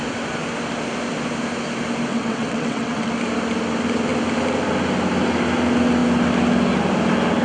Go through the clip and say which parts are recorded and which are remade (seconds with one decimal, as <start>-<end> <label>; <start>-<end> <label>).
0.0-2.1 recorded; 2.1-3.1 remade; 3.1-7.4 recorded